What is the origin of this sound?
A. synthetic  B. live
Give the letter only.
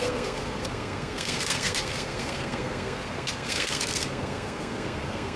A